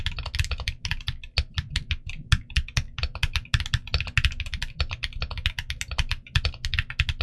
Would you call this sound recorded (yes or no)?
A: yes